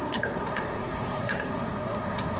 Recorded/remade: remade